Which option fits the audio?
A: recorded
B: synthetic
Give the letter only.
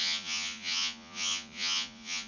B